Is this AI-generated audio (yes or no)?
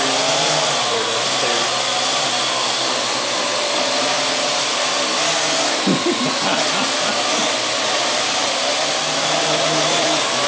no